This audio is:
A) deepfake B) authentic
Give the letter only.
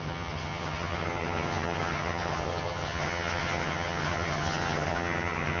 A